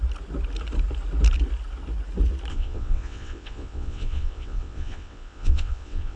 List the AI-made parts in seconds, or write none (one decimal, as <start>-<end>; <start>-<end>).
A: 2.5-6.2